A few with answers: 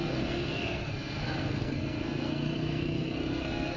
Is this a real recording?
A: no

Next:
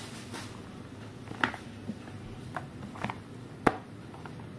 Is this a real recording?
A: yes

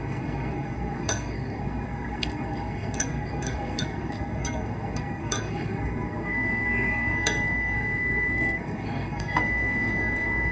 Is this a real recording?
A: no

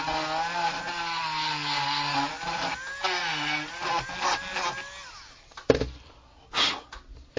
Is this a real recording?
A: yes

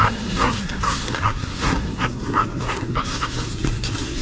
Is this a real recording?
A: no